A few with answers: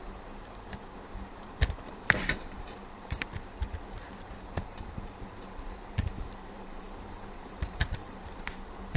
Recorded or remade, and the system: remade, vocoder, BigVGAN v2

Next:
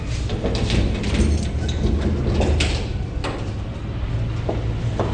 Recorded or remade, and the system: recorded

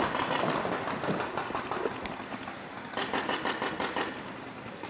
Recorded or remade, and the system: recorded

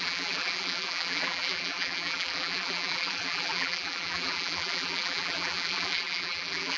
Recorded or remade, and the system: remade, vocoder, BigVGAN v2